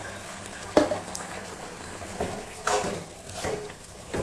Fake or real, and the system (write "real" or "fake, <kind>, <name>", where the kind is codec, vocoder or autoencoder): fake, codec, SNAC